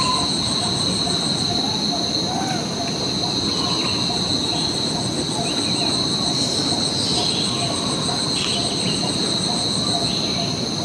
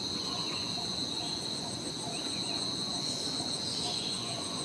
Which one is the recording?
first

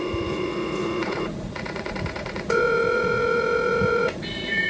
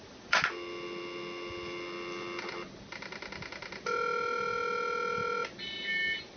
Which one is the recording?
second